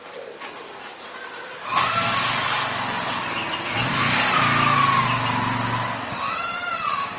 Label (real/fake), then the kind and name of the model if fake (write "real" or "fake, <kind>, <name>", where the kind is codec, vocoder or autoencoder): real